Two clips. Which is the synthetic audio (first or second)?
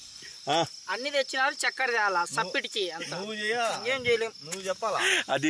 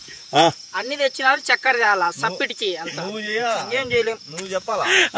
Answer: second